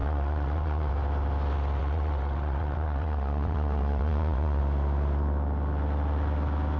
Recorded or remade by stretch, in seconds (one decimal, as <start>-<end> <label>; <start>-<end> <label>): 0.0-0.9 remade; 0.9-1.8 recorded; 1.8-4.6 remade; 4.6-6.8 recorded